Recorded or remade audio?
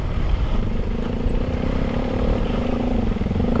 remade